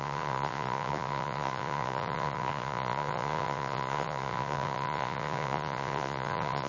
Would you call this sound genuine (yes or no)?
no